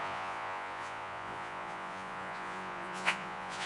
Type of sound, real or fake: fake